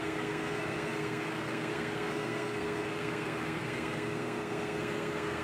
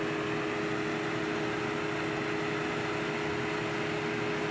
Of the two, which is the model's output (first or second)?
first